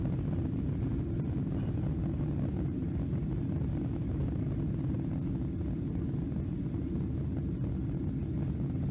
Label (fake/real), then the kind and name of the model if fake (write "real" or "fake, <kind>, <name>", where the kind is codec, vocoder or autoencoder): real